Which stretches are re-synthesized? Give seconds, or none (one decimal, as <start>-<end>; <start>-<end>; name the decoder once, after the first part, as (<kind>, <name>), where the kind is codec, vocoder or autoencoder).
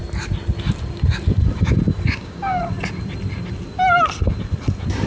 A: 2.1-2.6 (codec, DAC)